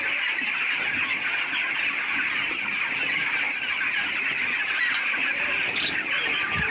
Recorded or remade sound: recorded